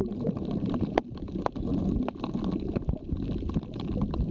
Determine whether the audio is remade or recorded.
recorded